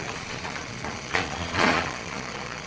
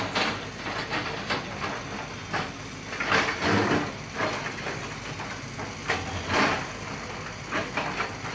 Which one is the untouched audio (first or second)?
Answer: second